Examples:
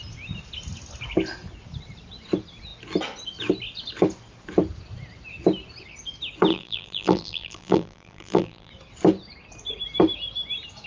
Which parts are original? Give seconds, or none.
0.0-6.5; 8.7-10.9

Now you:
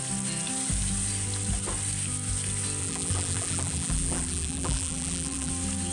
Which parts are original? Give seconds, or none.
0.0-2.8; 5.5-5.9

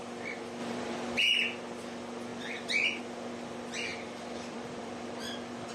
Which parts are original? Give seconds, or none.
0.0-0.6; 1.2-2.3; 3.0-3.9

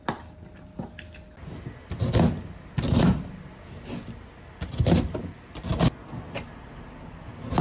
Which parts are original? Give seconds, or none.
0.0-7.6

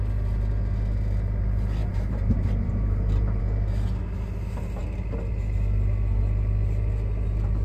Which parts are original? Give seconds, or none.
0.0-1.8; 3.4-7.6

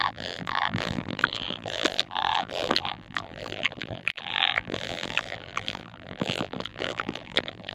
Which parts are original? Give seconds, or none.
none

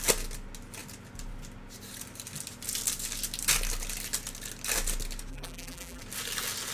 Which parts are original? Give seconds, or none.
0.0-5.3; 6.0-6.7

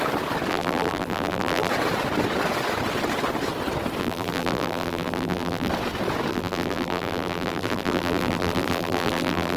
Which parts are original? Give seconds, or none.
0.0-0.5; 1.7-4.0; 5.7-6.3